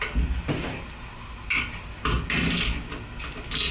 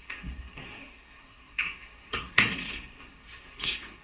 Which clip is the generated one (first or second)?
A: second